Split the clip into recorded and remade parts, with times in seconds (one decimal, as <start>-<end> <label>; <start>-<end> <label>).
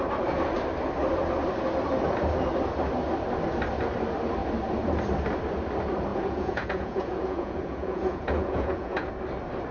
0.0-6.1 recorded; 6.1-9.1 remade; 9.1-9.7 recorded